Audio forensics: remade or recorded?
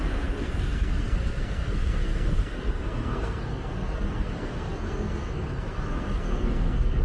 remade